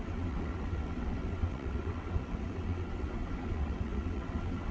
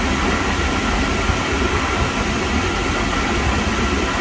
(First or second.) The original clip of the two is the second